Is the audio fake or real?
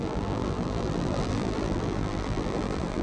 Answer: fake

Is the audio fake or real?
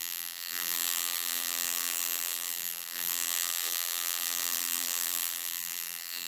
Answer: fake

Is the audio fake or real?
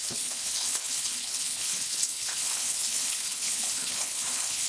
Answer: fake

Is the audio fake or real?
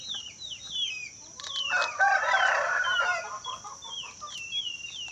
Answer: real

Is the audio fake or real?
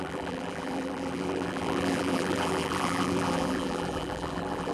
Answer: fake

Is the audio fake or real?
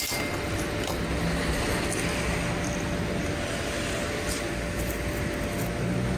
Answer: real